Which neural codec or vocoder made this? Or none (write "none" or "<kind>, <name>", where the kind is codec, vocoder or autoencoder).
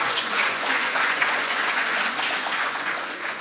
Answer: vocoder, Vocos